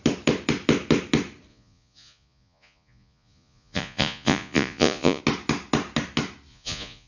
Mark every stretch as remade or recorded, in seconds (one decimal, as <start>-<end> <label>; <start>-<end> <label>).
0.0-1.5 recorded; 1.5-5.2 remade; 5.2-6.5 recorded; 6.5-7.1 remade